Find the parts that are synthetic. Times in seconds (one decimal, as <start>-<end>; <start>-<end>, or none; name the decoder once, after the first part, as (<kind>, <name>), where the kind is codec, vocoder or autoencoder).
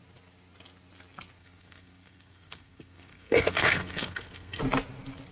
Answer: 1.4-4.6 (codec, SNAC)